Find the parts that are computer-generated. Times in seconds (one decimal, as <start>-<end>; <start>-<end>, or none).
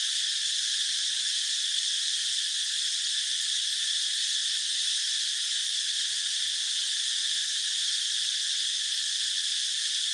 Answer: 0.0-10.1